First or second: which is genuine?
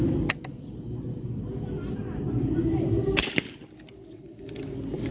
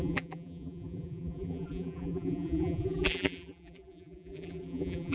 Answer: first